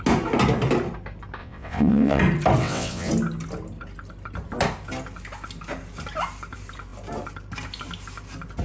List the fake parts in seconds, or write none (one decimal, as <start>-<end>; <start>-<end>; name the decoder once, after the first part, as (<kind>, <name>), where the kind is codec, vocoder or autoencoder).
1.4-2.2 (vocoder, WaveNeXt); 2.6-3.1